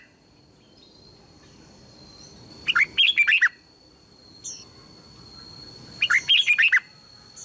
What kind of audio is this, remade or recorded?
recorded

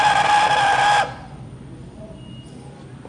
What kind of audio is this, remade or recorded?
recorded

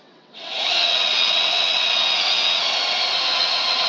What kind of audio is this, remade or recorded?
remade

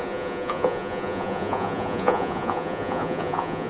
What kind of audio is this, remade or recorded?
remade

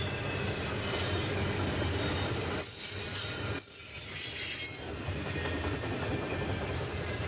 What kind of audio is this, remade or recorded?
recorded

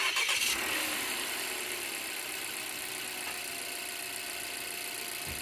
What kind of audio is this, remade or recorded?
recorded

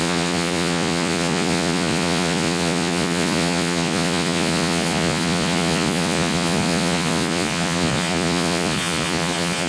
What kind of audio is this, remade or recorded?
remade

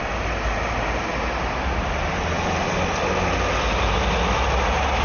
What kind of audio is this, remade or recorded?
recorded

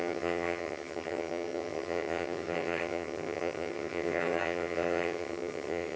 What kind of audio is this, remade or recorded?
remade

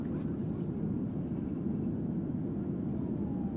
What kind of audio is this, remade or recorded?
recorded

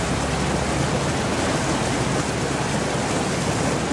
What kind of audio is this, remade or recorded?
recorded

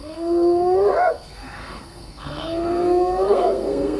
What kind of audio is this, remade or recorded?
remade